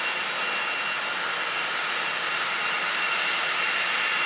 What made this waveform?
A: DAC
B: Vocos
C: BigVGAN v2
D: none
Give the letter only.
D